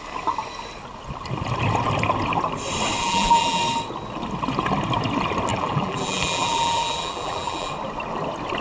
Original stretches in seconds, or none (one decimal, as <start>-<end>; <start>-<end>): 0.0-3.0; 3.6-5.5; 7.7-8.6